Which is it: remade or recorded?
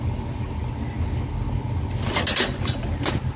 recorded